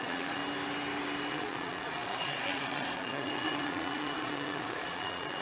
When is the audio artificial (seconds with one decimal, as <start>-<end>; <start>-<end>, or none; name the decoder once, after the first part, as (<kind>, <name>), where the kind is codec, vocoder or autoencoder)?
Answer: 0.0-0.4 (vocoder, Vocos); 1.3-5.4